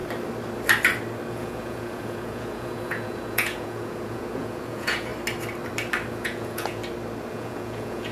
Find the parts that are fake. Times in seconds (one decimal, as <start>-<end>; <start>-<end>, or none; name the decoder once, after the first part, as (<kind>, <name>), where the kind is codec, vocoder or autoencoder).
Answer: 1.3-5.1 (vocoder, Vocos); 6.1-6.8; 7.3-8.1